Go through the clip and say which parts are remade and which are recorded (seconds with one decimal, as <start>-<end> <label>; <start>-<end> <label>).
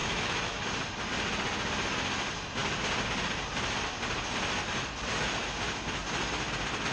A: 0.0-0.6 remade; 0.6-6.9 recorded